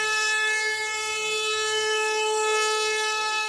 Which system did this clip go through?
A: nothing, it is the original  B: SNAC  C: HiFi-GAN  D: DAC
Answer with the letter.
B